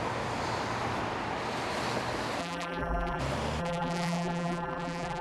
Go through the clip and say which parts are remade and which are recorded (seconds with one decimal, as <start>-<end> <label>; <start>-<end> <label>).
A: 0.0-2.4 recorded; 2.4-3.2 remade; 3.2-3.6 recorded; 3.6-5.2 remade